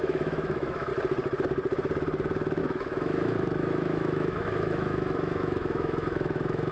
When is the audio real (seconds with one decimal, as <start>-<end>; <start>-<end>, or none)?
0.9-2.6